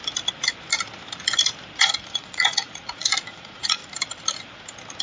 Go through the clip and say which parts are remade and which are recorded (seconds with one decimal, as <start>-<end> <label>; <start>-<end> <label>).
0.0-1.8 recorded; 1.8-3.8 remade; 3.8-5.0 recorded